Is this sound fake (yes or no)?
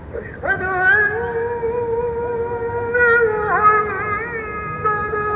no